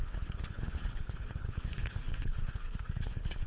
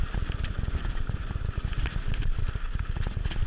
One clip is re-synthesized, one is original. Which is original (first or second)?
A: second